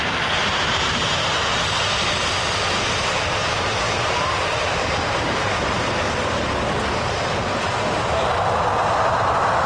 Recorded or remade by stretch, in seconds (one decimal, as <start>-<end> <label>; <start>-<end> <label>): 0.0-0.4 recorded; 0.4-1.6 remade; 1.6-3.4 recorded; 3.4-6.6 remade; 6.6-9.7 recorded